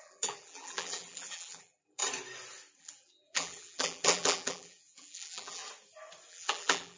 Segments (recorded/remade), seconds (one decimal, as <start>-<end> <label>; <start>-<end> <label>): 0.0-2.0 remade; 2.0-2.8 recorded; 2.8-5.6 remade; 5.6-6.3 recorded; 6.3-7.0 remade